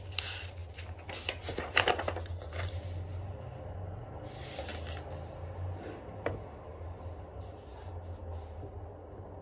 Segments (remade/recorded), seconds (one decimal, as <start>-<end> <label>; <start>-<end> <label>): 0.0-9.4 recorded